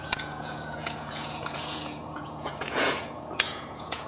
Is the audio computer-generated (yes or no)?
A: yes